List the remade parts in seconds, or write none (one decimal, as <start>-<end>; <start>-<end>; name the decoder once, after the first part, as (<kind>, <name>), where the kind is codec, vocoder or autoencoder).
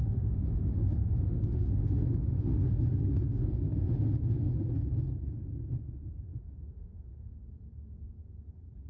0.0-4.7 (autoencoder, DAC-VAE); 6.3-7.3